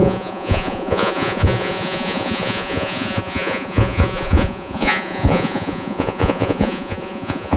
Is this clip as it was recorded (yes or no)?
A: no